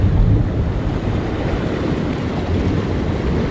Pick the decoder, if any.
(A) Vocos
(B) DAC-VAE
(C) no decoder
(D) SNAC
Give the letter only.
C